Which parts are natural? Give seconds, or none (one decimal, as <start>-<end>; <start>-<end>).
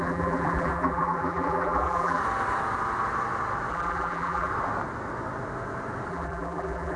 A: 2.2-3.7; 4.5-6.1